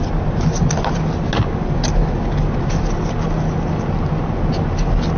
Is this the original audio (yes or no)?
yes